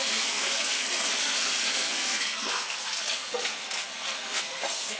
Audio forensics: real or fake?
fake